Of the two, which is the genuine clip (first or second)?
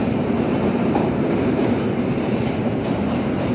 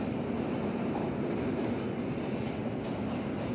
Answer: second